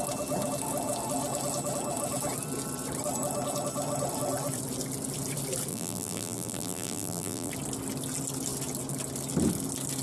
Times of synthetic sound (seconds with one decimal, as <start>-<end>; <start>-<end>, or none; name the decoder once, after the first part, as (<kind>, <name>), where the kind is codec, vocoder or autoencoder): 5.7-7.5 (vocoder, BigVGAN v2)